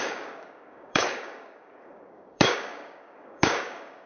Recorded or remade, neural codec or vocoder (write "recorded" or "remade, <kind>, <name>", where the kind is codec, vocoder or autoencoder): remade, codec, DAC